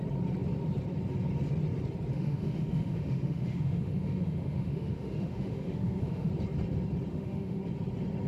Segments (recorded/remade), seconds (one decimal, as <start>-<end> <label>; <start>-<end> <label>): 0.0-2.1 recorded; 2.1-6.3 remade; 6.3-7.1 recorded; 7.1-7.6 remade; 7.6-8.3 recorded